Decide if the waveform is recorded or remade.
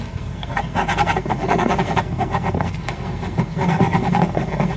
remade